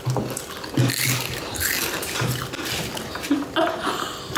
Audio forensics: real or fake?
real